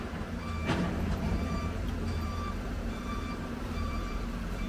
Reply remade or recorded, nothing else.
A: remade